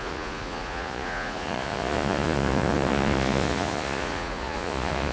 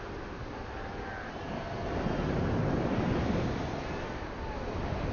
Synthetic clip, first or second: first